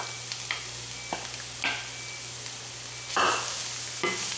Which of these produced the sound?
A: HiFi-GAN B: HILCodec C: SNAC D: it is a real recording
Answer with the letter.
D